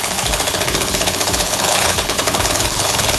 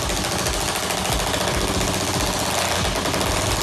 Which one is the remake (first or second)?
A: first